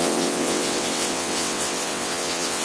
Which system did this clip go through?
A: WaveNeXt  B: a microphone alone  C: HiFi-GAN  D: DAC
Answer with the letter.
A